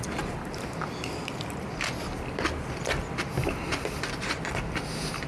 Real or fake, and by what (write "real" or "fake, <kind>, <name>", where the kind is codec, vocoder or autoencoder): real